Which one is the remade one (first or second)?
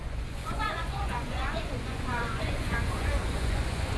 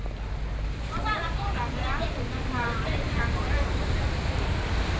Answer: first